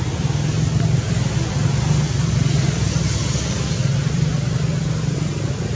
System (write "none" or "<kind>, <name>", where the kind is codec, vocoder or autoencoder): none